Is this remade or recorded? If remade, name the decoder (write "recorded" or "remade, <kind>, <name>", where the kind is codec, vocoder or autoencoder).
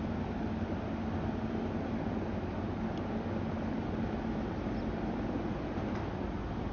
recorded